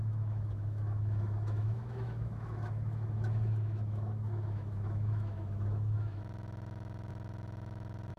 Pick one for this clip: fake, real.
fake